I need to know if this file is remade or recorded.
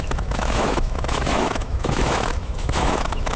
remade